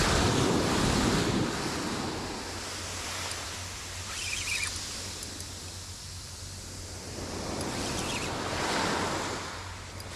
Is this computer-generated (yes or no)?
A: no